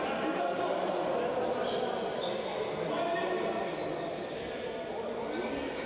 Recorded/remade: recorded